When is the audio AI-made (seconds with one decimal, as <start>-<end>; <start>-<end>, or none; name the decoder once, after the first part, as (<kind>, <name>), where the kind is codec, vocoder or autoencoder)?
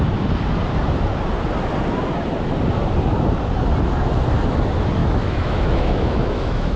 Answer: 5.0-6.8 (autoencoder, DAC-VAE)